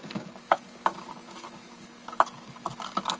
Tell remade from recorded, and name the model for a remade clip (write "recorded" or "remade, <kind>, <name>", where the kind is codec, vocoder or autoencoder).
remade, codec, DAC